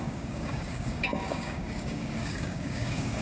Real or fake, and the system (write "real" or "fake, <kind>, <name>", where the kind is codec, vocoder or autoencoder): fake, codec, DAC